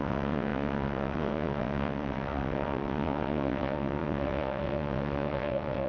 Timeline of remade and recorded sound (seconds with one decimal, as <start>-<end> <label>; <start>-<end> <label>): 0.0-5.9 remade